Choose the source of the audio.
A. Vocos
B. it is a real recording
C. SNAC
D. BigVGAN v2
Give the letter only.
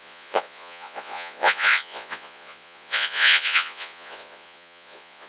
A